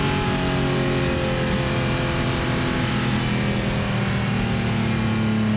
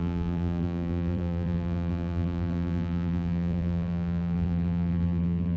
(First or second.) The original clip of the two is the first